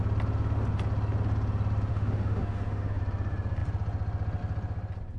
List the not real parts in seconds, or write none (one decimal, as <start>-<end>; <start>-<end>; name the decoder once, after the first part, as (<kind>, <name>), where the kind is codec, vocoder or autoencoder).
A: 1.9-3.0 (autoencoder, DAC-VAE)